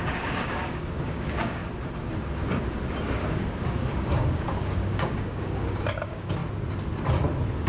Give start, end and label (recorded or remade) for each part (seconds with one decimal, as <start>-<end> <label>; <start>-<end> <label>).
0.0-1.6 remade; 1.6-3.2 recorded; 3.2-6.4 remade; 6.4-7.7 recorded